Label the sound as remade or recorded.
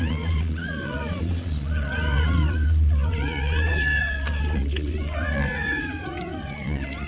remade